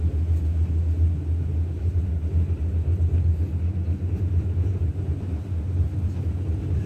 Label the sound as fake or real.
real